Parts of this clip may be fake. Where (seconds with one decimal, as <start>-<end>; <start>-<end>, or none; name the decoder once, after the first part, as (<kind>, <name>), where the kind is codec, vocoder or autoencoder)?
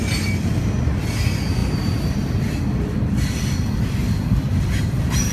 none